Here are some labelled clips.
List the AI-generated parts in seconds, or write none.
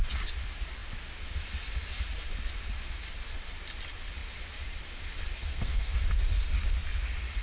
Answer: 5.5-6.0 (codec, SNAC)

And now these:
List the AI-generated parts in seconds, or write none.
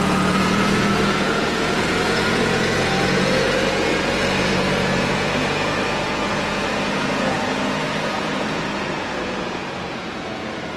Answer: 0.0-3.9 (vocoder, Vocos); 4.4-10.8